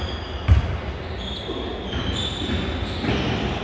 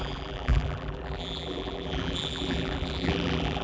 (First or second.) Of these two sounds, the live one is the first